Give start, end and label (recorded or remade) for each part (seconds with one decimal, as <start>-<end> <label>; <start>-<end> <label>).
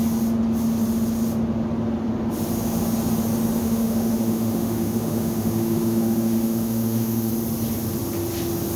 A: 0.0-3.6 recorded; 3.6-7.3 remade; 7.3-8.8 recorded